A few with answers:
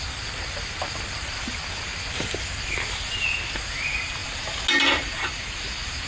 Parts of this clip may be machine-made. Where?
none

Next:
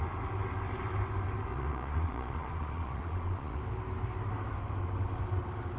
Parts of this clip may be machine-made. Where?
1.5-3.6 (vocoder, Vocos)

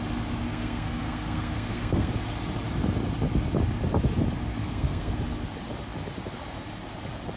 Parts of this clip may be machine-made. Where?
0.5-2.1 (codec, SNAC); 4.6-5.1

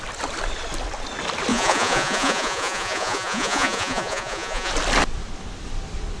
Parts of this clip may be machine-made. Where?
1.5-4.7 (vocoder, Vocos)

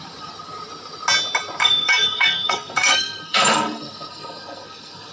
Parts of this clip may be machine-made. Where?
1.6-5.1 (codec, SNAC)